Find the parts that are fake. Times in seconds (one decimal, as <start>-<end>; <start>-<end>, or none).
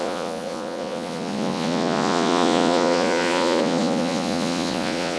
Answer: 0.0-5.2